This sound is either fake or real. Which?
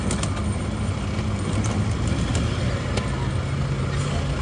real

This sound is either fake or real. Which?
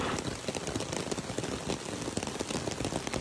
real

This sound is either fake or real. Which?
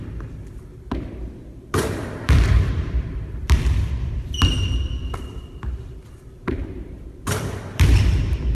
fake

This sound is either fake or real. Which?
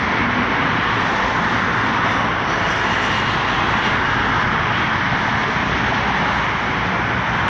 real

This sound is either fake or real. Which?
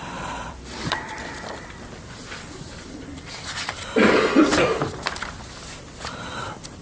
fake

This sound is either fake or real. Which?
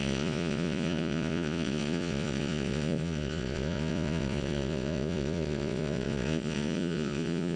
fake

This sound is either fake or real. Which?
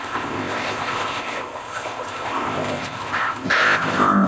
fake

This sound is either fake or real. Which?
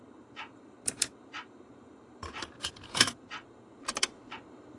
fake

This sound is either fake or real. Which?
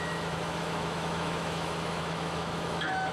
fake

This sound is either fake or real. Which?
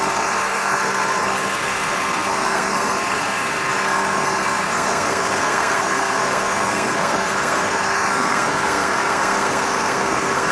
fake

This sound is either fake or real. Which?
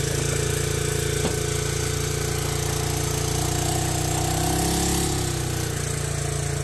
real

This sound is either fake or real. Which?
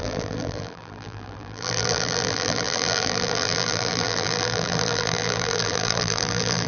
fake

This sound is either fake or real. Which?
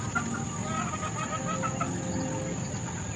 real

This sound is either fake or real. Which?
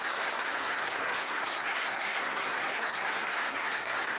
fake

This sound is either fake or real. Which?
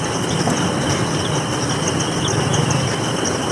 real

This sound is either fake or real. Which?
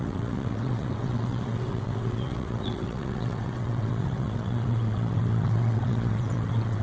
fake